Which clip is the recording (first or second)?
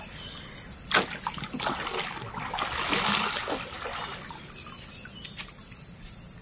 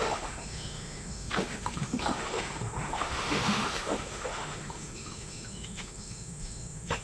first